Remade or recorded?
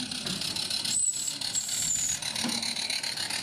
recorded